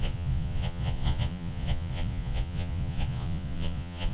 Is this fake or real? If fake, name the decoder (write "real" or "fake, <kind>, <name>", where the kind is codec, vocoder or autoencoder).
fake, vocoder, Vocos